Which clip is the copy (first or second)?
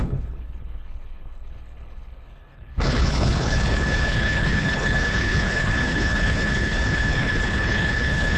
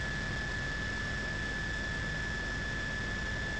first